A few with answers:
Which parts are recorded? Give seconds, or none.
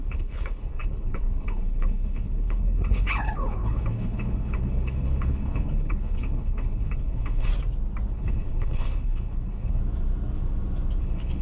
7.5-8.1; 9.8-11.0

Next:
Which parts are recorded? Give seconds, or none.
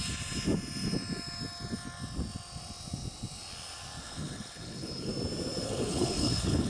0.0-4.0; 5.1-5.6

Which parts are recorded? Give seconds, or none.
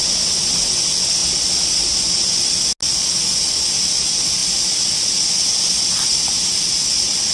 0.0-7.3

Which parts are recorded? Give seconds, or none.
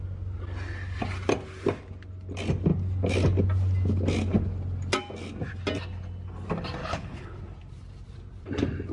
0.0-6.8; 7.4-8.9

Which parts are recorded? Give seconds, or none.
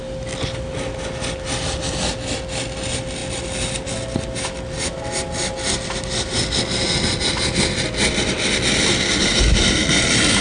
0.0-10.4